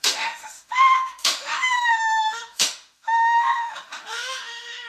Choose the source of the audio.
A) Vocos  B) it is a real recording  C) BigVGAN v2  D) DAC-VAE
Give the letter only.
D